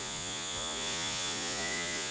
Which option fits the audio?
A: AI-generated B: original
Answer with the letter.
A